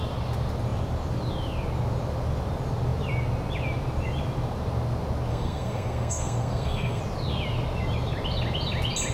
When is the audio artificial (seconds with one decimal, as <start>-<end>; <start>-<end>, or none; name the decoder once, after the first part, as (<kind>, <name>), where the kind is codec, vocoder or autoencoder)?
5.3-7.0 (codec, SNAC)